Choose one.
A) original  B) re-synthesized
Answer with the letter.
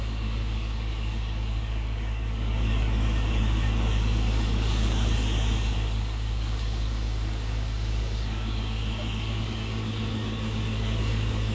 B